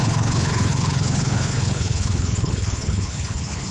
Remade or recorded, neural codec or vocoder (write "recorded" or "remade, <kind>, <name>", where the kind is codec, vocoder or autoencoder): remade, codec, HILCodec